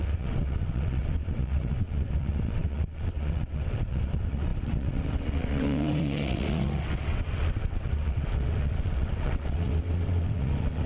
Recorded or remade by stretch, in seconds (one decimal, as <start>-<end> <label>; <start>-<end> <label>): 0.0-10.9 remade